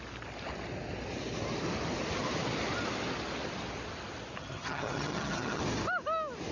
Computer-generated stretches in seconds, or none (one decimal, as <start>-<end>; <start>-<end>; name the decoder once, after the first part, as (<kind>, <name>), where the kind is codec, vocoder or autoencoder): 4.4-5.6 (vocoder, HiFi-GAN)